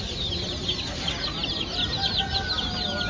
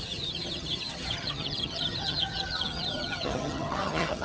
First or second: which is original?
first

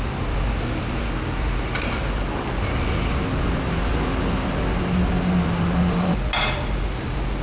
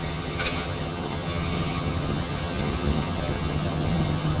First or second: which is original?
first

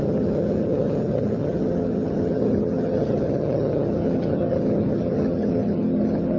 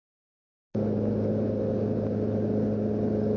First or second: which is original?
second